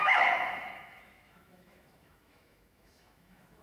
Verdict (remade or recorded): remade